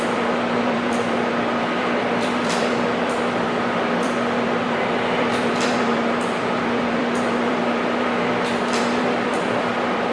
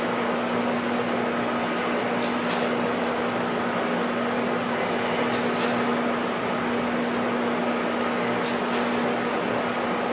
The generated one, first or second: first